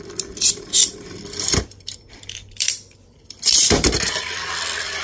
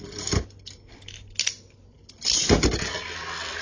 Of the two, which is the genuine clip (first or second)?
second